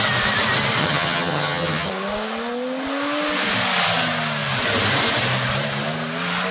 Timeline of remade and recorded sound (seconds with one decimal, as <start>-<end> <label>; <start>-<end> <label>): 0.0-0.8 recorded; 0.8-1.9 remade; 1.9-6.5 recorded

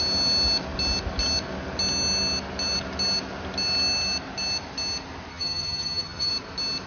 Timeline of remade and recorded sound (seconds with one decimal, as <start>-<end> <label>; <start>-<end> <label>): 0.0-5.3 recorded; 5.3-6.3 remade; 6.3-6.9 recorded

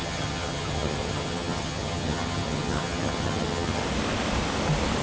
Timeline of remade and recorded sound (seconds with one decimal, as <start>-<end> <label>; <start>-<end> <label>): 0.0-3.8 remade; 3.8-5.0 recorded

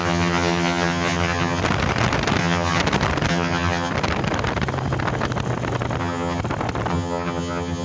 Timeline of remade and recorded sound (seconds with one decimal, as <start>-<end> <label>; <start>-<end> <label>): 0.0-1.6 remade; 1.6-2.4 recorded; 2.4-2.8 remade; 2.8-3.3 recorded; 3.3-3.9 remade; 3.9-6.0 recorded; 6.0-6.4 remade; 6.4-6.9 recorded; 6.9-7.8 remade